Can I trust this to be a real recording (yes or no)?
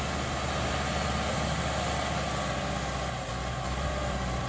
yes